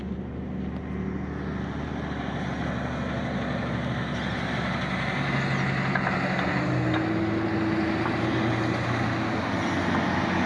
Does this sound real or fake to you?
real